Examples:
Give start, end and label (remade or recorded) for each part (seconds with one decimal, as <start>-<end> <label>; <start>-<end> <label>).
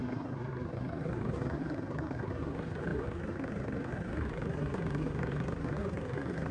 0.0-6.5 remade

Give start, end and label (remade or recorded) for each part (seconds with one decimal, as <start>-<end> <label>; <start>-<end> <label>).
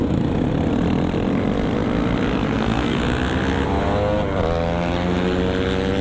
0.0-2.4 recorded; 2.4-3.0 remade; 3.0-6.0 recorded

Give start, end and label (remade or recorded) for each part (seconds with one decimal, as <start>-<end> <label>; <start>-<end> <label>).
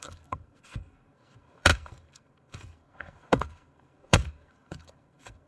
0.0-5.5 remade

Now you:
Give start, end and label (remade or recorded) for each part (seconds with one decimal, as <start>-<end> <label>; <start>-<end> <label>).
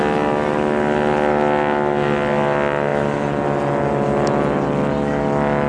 0.0-5.7 recorded